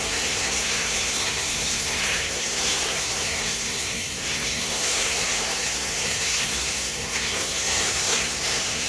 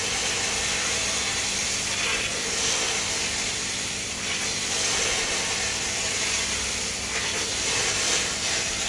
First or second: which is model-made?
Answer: first